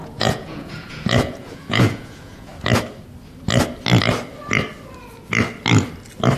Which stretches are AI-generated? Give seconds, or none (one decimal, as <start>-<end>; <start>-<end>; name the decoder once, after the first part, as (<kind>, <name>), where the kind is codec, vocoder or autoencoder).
0.0-2.5 (vocoder, Vocos)